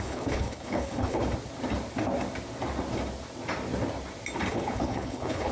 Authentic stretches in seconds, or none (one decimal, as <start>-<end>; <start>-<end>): 1.2-4.5